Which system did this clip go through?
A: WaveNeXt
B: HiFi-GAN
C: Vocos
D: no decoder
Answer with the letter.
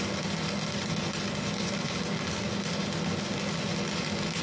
D